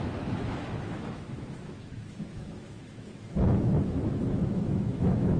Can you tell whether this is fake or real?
fake